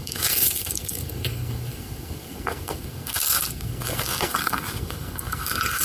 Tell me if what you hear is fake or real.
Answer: fake